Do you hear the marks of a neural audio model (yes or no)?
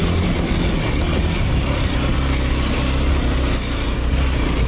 no